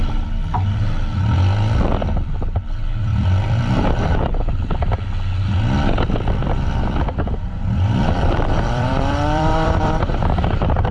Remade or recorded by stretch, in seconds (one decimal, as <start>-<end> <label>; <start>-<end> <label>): 0.0-3.1 recorded; 3.1-4.9 remade; 4.9-6.4 recorded; 6.4-10.1 remade; 10.1-10.9 recorded